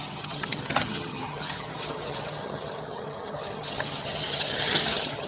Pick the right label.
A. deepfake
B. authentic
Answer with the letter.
A